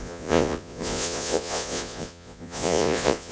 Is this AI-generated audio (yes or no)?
yes